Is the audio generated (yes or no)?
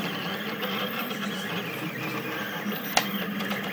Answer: no